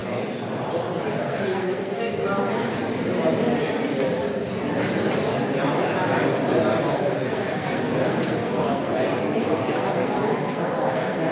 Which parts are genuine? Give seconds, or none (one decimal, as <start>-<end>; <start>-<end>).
0.0-1.2; 2.8-6.9